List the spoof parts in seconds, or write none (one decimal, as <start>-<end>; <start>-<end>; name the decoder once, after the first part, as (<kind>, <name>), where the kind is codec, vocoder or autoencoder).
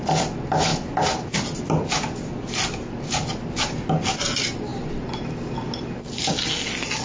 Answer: none